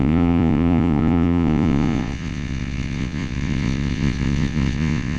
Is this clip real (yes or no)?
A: no